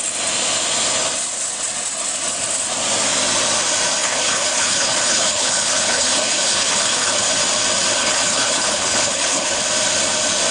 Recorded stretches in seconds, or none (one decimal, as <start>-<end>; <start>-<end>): 0.0-4.0; 7.3-8.0; 9.6-10.5